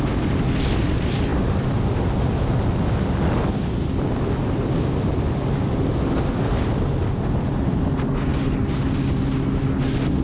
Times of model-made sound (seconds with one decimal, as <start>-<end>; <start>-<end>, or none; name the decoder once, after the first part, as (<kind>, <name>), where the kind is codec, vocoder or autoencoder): none